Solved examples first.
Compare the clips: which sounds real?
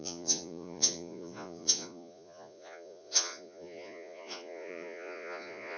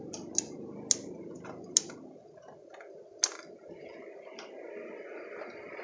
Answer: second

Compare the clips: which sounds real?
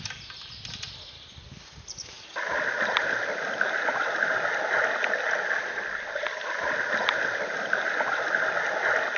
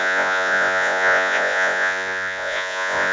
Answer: first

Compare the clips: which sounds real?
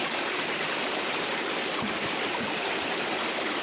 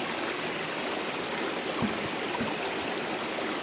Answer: second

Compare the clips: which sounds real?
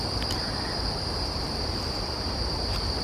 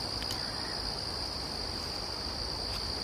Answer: second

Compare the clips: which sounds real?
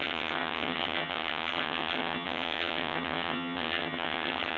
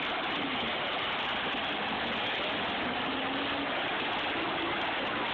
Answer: second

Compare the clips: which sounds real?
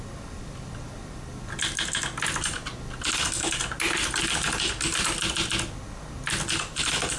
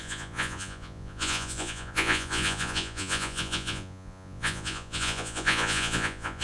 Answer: first